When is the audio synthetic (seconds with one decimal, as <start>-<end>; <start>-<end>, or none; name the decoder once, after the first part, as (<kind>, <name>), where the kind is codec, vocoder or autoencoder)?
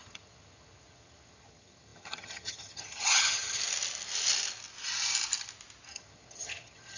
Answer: 0.0-3.6 (vocoder, HiFi-GAN); 5.9-7.0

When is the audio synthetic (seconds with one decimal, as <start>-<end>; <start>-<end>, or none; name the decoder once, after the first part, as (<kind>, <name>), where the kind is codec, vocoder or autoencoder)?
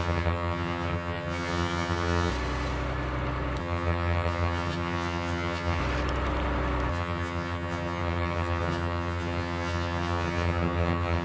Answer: 0.0-2.3 (vocoder, HiFi-GAN); 3.6-5.8; 6.9-11.2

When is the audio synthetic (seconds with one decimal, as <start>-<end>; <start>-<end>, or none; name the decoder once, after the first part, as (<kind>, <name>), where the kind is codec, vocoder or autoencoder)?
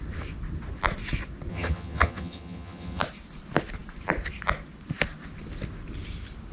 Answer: 1.5-3.0 (vocoder, HiFi-GAN)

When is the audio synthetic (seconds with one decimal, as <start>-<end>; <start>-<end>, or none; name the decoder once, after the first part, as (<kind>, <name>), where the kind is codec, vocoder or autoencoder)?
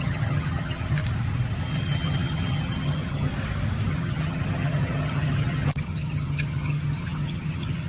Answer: 0.0-1.0 (vocoder, HiFi-GAN); 1.6-3.3; 3.9-7.9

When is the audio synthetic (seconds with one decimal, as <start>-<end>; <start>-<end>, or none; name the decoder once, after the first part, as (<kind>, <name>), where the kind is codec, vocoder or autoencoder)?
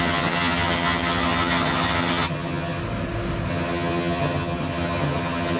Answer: 0.0-2.8 (vocoder, HiFi-GAN); 3.5-5.6